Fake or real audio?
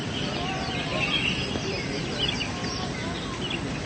real